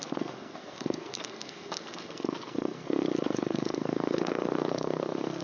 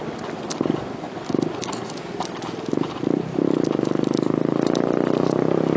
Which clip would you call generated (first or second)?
first